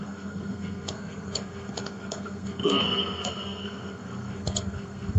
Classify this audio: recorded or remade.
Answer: remade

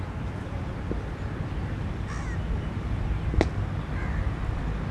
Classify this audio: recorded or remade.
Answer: recorded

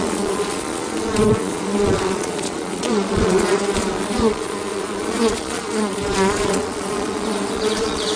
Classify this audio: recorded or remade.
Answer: remade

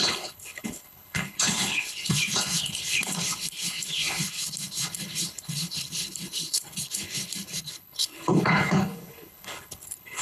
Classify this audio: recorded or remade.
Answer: remade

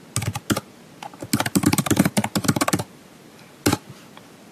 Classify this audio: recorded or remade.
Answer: recorded